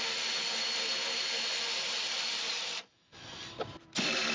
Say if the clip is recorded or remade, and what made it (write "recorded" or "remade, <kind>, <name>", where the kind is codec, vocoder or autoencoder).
remade, vocoder, BigVGAN v2